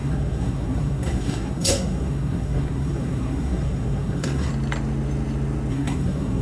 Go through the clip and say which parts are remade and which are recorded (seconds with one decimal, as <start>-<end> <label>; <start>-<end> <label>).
0.0-4.5 remade; 4.5-5.7 recorded; 5.7-6.4 remade